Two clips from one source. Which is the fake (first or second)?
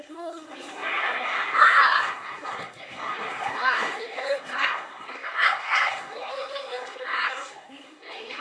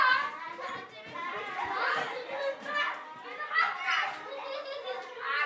first